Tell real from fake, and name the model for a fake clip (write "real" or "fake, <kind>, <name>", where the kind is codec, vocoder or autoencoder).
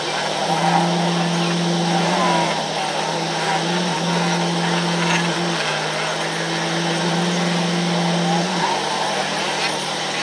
real